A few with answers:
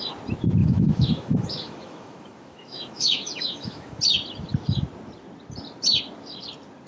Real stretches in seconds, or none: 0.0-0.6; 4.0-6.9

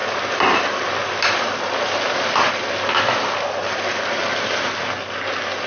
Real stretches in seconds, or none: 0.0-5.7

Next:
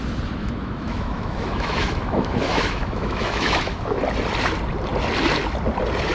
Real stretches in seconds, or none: 0.0-0.4; 4.0-6.1

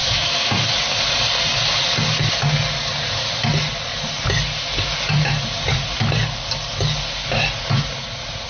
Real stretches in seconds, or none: 0.5-8.5

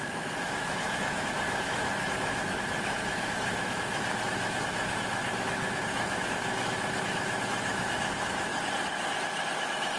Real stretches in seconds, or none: 8.5-9.6

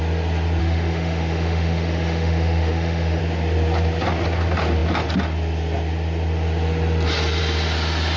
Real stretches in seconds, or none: 0.0-0.6; 3.2-8.2